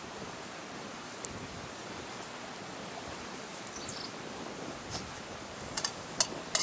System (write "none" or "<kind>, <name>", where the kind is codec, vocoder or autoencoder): none